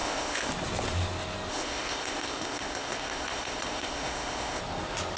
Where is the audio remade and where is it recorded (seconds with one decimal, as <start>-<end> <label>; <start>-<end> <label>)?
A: 0.0-0.5 remade; 0.5-1.5 recorded; 1.5-4.6 remade; 4.6-5.2 recorded